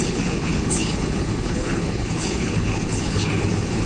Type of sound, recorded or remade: remade